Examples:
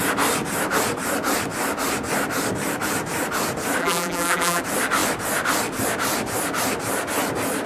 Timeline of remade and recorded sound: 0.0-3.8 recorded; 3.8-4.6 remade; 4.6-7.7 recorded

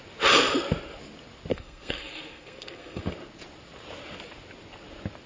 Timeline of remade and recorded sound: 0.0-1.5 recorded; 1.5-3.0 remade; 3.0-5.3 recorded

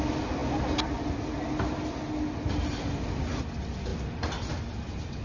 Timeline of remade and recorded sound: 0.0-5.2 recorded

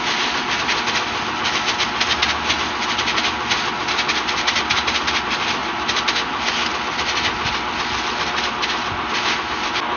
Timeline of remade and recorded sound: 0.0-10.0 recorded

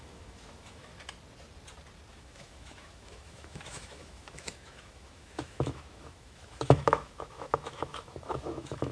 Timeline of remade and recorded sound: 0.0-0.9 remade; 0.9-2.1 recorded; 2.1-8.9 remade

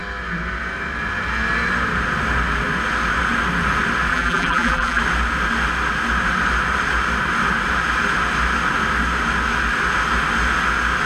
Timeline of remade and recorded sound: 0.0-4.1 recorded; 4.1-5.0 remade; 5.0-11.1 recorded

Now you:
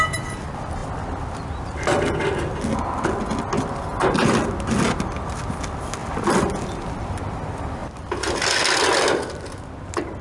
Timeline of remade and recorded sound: 0.0-6.0 recorded; 6.0-7.2 remade; 7.2-7.8 recorded; 7.8-8.3 remade; 8.3-10.2 recorded